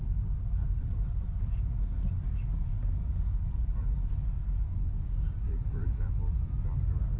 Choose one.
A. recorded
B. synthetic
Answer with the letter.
A